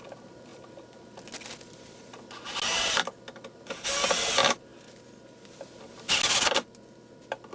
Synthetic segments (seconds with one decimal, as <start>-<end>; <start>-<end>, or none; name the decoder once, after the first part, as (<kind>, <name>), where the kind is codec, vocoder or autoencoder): none